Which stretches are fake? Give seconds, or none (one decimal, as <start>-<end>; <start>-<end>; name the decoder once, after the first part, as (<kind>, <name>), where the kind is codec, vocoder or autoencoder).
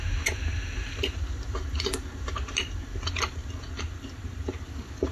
none